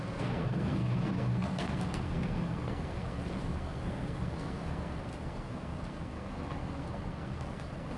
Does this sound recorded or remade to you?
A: remade